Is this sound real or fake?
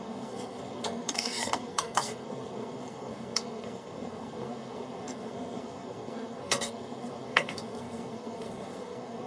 fake